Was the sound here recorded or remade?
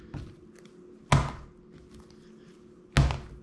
recorded